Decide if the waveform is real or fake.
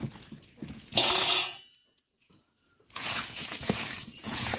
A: fake